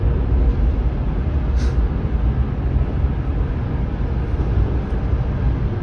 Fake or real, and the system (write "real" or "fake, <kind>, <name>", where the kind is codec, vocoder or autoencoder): real